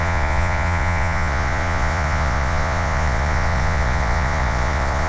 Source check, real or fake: fake